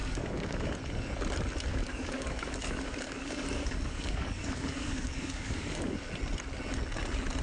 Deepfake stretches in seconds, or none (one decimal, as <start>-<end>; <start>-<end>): 0.0-0.7; 1.7-6.1